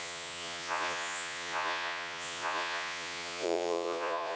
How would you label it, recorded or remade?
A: remade